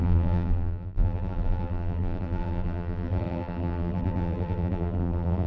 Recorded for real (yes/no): no